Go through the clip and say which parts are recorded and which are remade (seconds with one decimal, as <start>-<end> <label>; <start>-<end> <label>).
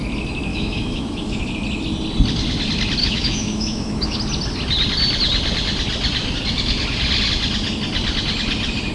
0.0-0.5 recorded; 0.5-1.5 remade; 1.5-3.0 recorded; 3.0-4.2 remade; 4.2-8.9 recorded